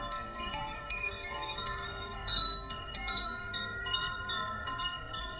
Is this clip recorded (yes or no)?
no